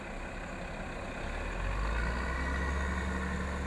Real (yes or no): yes